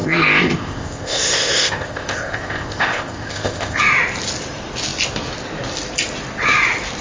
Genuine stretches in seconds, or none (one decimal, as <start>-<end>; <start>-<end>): 3.8-7.0